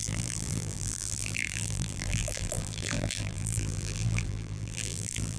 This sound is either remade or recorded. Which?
remade